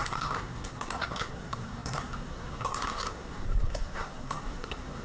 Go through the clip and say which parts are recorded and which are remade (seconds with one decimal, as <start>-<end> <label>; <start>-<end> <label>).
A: 0.0-5.0 remade